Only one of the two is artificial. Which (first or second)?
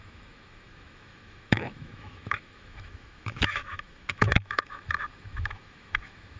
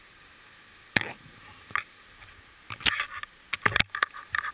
first